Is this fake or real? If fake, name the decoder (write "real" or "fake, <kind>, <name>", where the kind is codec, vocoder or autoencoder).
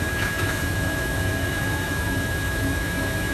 fake, autoencoder, DAC-VAE